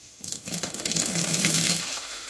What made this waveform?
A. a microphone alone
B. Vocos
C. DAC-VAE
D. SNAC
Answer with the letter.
C